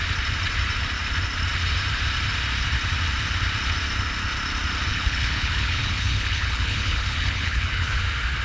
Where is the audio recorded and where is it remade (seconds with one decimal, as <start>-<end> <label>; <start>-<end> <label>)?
0.0-4.9 recorded; 4.9-8.0 remade; 8.0-8.4 recorded